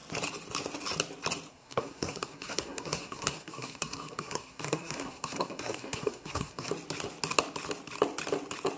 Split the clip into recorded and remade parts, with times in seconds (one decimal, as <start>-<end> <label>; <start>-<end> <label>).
0.0-1.5 recorded; 1.5-6.7 remade; 6.7-8.8 recorded